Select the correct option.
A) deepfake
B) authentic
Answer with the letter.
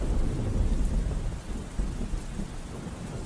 B